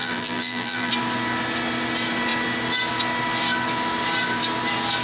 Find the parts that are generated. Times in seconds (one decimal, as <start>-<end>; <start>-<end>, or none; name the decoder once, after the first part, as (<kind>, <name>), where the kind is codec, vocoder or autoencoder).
0.0-0.9 (vocoder, BigVGAN v2)